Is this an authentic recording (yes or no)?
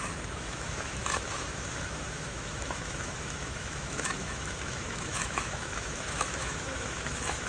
no